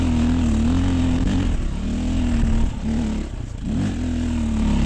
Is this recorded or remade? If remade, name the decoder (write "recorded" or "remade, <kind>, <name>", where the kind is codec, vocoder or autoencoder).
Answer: recorded